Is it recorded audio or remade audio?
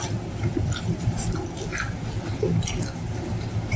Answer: recorded